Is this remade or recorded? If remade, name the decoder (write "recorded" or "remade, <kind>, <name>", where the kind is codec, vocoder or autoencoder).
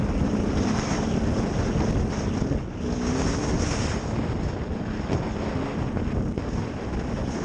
recorded